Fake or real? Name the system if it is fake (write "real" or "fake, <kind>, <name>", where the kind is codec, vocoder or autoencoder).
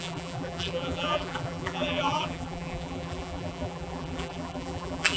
fake, vocoder, BigVGAN v2